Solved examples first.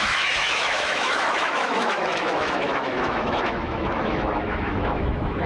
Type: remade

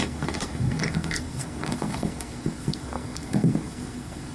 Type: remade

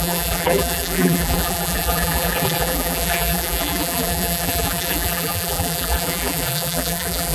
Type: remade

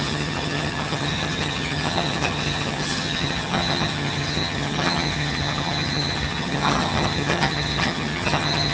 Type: remade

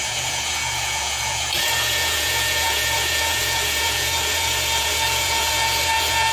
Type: remade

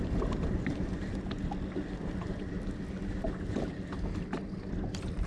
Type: recorded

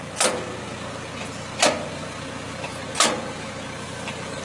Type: recorded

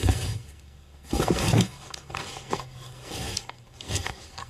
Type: remade